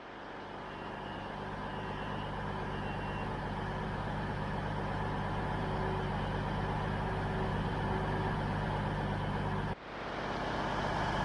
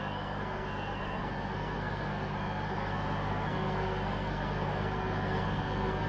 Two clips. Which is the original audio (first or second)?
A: first